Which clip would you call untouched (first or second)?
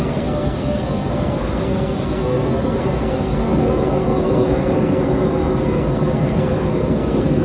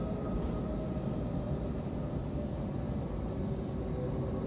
second